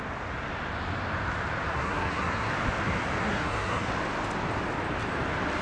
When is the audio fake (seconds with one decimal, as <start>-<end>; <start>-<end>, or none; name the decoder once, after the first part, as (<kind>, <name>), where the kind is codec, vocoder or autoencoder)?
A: 1.7-2.5 (codec, SNAC); 3.2-3.9